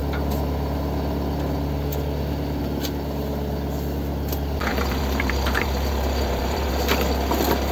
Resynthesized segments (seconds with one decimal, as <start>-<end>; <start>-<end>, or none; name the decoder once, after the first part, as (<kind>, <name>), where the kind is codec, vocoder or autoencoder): 4.7-6.7 (vocoder, BigVGAN v2)